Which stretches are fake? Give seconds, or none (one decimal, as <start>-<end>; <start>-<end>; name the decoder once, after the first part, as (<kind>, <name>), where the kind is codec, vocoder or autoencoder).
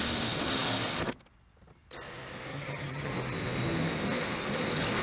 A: 2.5-3.1 (vocoder, HiFi-GAN)